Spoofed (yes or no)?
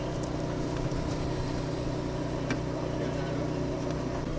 no